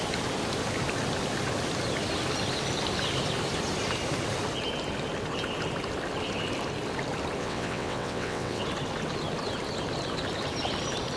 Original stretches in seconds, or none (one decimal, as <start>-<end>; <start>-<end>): 0.0-7.4; 8.6-11.2